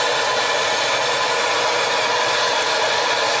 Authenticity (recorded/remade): recorded